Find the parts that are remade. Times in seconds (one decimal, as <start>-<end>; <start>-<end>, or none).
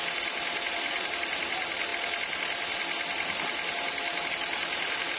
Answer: none